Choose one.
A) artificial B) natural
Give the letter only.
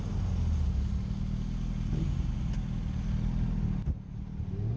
B